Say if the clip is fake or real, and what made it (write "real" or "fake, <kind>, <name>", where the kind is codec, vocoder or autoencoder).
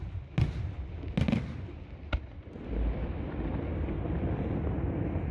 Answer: real